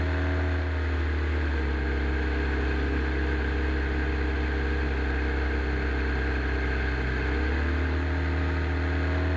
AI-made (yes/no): no